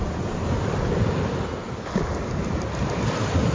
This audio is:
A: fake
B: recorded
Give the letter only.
B